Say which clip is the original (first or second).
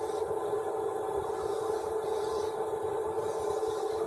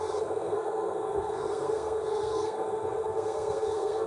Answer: first